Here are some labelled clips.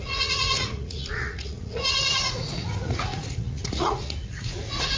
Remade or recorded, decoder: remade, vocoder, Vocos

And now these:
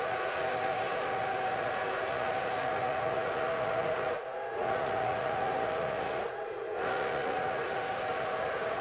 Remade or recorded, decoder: remade, vocoder, Vocos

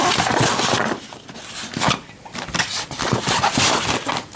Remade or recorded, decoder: recorded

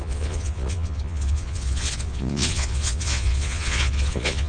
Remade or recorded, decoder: remade, vocoder, Vocos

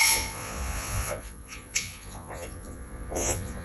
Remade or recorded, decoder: remade, vocoder, Vocos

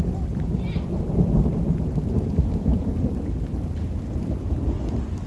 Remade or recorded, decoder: recorded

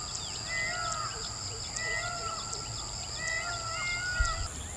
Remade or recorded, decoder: recorded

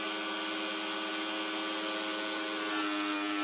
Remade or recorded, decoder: recorded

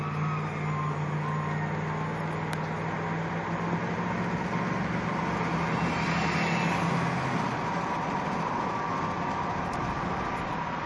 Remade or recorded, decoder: recorded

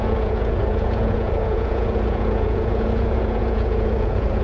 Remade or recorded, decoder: remade, vocoder, Vocos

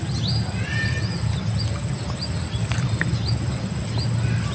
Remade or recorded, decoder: recorded